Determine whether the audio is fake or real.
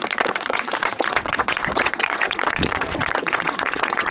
fake